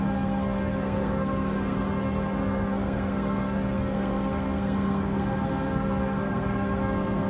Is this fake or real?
fake